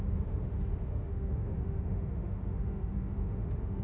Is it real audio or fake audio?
fake